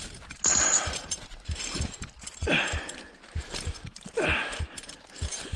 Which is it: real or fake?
fake